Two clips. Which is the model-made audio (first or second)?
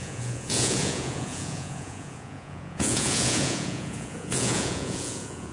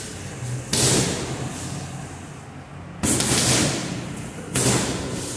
first